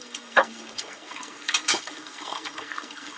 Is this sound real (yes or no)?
no